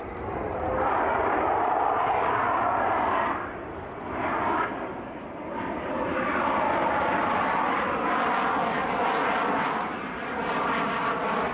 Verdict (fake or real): real